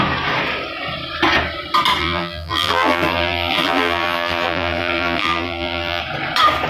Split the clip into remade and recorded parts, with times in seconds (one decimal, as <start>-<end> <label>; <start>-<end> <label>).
0.0-2.0 recorded; 2.0-6.0 remade; 6.0-6.7 recorded